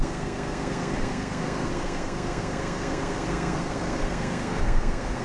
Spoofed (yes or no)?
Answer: yes